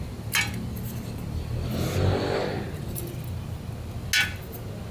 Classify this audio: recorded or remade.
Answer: recorded